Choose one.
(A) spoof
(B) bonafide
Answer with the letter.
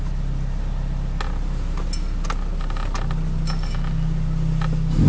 B